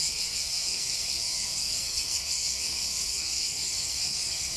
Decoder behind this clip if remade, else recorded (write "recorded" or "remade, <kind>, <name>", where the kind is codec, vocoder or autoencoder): remade, codec, SNAC